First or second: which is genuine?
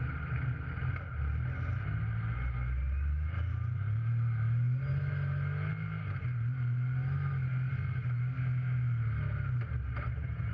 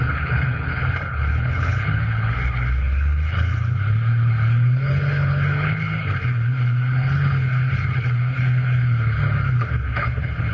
first